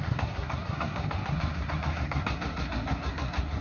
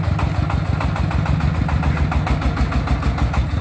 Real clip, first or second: second